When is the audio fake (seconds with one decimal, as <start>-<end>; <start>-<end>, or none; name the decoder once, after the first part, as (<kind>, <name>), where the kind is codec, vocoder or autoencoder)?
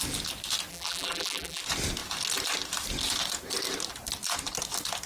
0.7-1.6 (vocoder, BigVGAN v2)